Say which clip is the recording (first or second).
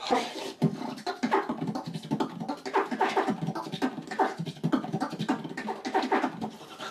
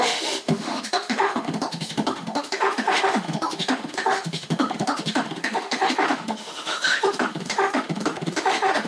first